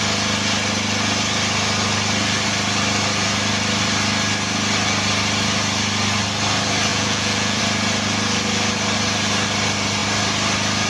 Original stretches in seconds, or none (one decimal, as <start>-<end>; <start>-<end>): 0.0-6.9; 7.6-10.9